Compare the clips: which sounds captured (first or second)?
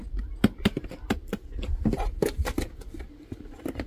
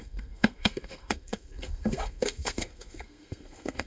first